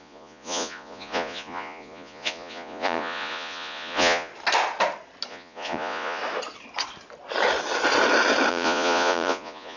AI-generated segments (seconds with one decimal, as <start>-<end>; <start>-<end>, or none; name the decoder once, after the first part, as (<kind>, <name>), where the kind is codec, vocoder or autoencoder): 0.0-4.3 (vocoder, Vocos); 5.3-6.2; 8.5-9.8